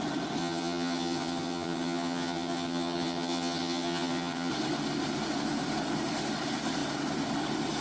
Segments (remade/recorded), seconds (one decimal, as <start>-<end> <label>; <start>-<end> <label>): 0.0-0.4 recorded; 0.4-4.5 remade; 4.5-7.8 recorded